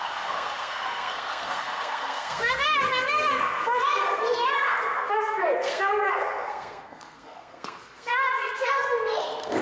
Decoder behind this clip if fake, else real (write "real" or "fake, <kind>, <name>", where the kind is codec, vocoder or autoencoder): fake, codec, SNAC